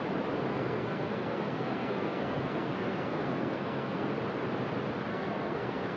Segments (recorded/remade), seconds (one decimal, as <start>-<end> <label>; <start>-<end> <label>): 0.0-0.5 recorded; 0.5-4.1 remade; 4.1-5.1 recorded; 5.1-6.0 remade